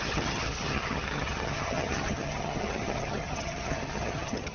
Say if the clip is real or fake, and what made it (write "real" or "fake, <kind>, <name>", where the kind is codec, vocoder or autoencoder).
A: fake, vocoder, HiFi-GAN